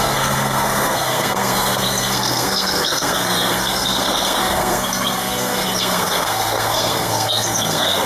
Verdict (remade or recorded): remade